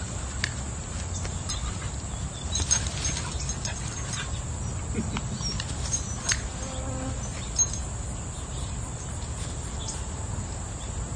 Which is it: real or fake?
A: real